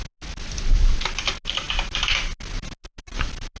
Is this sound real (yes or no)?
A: yes